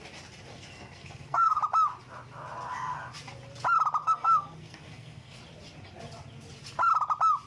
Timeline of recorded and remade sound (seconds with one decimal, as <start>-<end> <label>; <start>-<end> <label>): 0.0-0.5 recorded; 0.5-1.6 remade; 1.6-4.0 recorded; 4.0-5.4 remade; 5.4-7.5 recorded